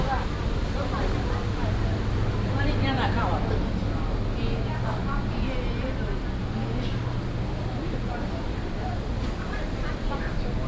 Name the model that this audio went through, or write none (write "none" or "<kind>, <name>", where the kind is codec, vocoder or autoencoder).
none